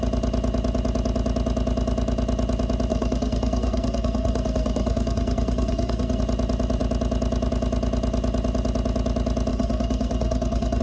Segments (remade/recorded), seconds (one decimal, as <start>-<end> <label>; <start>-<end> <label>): 0.0-2.9 recorded; 2.9-6.2 remade; 6.2-9.5 recorded; 9.5-10.8 remade